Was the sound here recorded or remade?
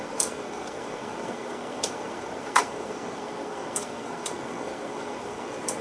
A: remade